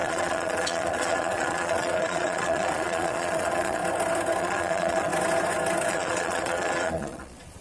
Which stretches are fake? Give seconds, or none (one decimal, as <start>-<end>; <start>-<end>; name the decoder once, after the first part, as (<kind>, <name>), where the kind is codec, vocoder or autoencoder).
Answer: 0.0-3.8 (vocoder, Vocos); 4.4-5.1; 5.9-7.6